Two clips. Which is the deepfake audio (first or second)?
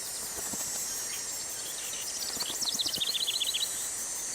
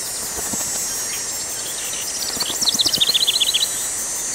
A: first